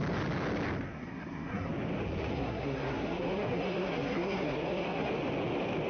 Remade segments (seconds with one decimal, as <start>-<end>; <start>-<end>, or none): 0.9-1.7; 2.3-5.1